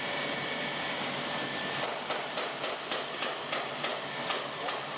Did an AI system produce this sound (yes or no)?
yes